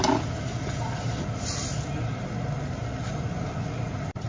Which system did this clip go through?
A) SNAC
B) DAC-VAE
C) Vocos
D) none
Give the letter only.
D